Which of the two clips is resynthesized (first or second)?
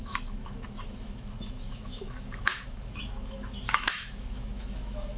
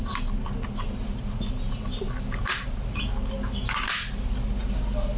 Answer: first